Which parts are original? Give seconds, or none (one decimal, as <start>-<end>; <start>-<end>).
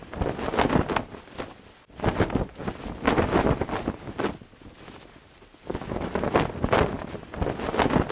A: 0.0-8.1